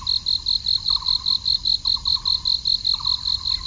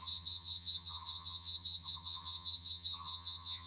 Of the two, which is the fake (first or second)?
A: second